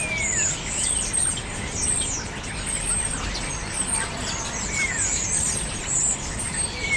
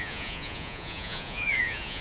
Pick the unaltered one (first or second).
first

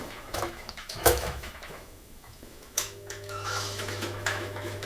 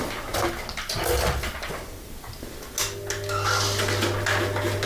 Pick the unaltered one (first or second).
second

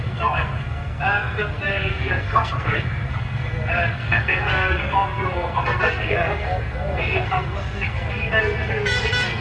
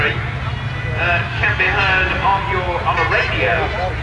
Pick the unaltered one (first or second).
second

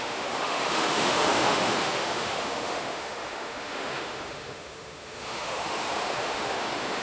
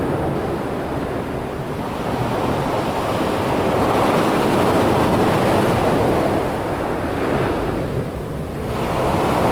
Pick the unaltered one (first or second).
second